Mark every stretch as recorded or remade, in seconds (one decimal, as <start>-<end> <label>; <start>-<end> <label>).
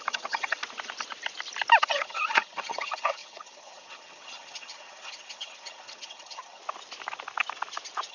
0.0-0.6 remade; 0.6-1.8 recorded; 1.8-6.6 remade; 6.6-8.1 recorded